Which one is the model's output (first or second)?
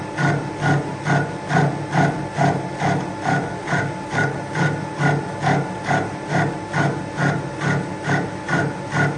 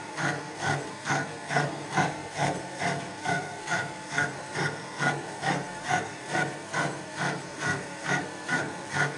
second